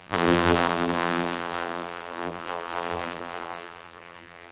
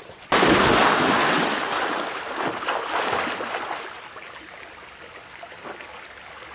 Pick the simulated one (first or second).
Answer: first